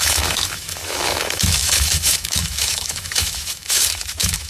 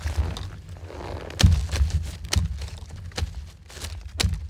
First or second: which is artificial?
first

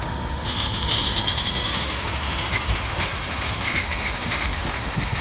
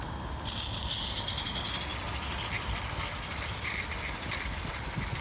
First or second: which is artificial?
first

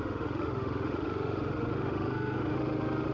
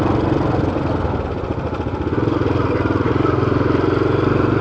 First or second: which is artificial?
first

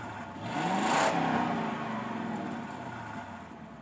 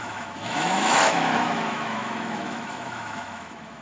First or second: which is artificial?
second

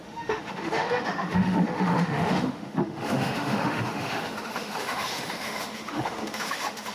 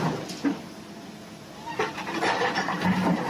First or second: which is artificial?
first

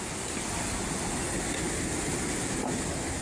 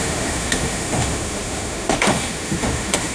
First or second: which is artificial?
second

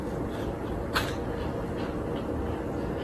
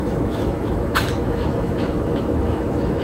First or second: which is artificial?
second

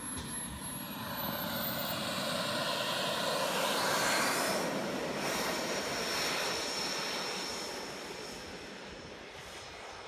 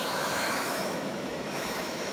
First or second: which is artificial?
second